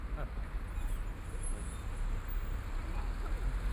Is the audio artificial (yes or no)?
no